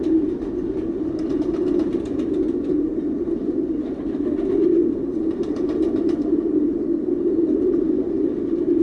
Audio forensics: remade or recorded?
recorded